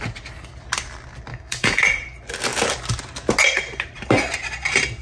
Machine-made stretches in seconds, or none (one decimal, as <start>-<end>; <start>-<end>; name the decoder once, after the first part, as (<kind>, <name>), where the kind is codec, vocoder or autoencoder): 1.3-1.8 (autoencoder, DAC-VAE)